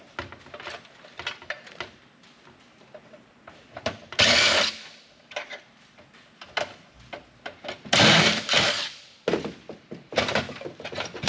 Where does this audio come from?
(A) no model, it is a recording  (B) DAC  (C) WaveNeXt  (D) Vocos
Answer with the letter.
A